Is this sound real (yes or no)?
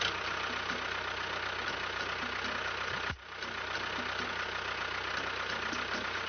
yes